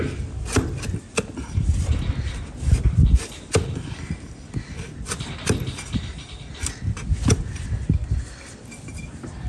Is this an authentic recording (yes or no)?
yes